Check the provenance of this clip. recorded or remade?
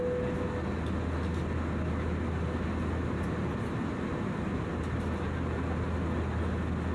recorded